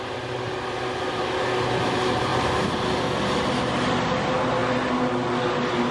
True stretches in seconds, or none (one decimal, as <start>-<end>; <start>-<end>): 0.0-5.9